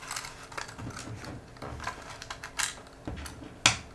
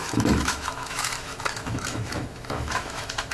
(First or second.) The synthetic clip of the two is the second